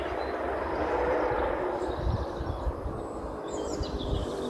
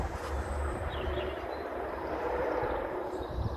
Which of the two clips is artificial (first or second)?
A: second